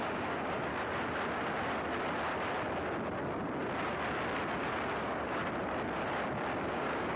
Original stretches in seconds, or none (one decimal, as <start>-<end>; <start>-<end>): 0.7-5.0; 5.4-6.7

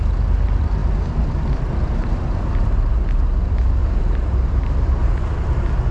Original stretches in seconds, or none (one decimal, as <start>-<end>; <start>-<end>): 0.0-3.8; 5.2-5.9